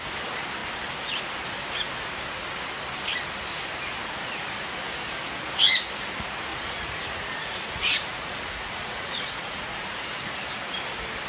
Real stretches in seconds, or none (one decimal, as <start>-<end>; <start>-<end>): 0.0-6.5; 10.3-11.3